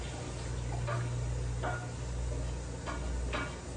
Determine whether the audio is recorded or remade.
recorded